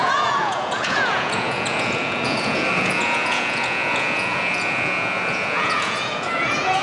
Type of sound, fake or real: fake